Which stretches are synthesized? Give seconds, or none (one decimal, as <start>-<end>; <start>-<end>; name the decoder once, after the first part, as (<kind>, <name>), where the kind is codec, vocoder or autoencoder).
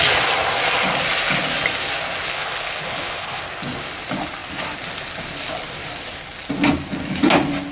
2.3-3.4 (codec, HILCodec)